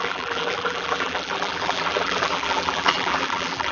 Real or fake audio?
fake